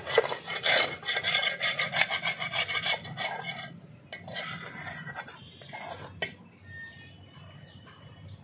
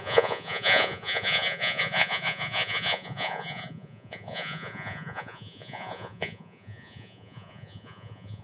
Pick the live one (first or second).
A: first